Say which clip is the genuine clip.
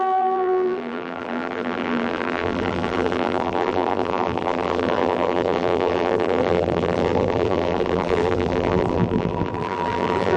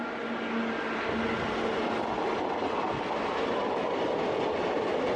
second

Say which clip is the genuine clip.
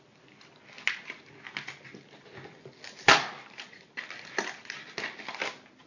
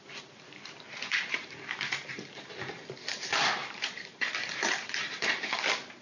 first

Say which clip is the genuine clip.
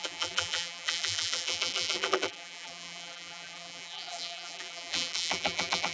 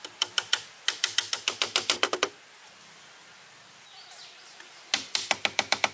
second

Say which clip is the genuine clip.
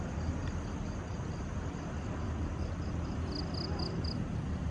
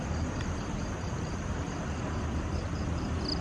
first